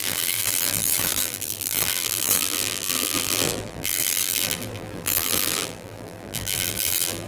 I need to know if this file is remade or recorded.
remade